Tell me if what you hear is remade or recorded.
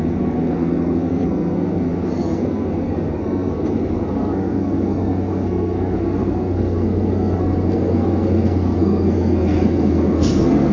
remade